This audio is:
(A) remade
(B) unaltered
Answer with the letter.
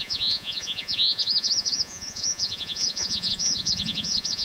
A